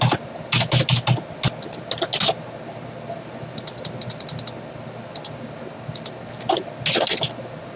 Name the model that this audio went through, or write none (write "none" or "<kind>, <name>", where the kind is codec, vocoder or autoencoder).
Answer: none